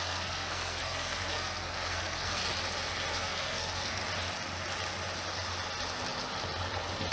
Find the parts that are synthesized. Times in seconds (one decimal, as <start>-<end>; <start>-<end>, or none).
0.0-2.4; 3.1-4.0